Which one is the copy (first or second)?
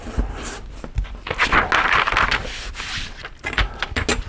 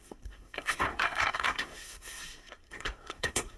second